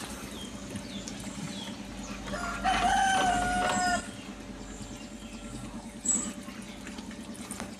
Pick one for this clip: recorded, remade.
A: recorded